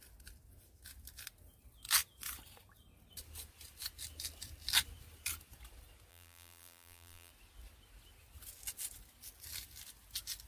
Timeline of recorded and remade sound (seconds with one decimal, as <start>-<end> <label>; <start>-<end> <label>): 0.0-6.1 recorded; 6.1-7.3 remade; 7.3-10.5 recorded